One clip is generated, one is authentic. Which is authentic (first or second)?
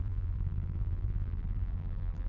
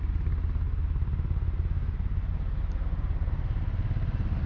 second